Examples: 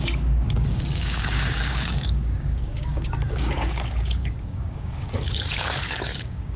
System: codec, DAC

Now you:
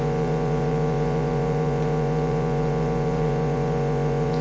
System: vocoder, Vocos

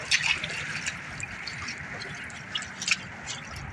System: none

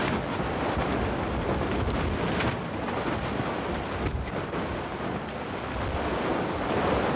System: none